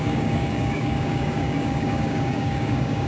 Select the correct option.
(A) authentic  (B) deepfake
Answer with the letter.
B